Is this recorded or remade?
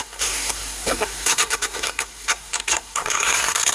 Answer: remade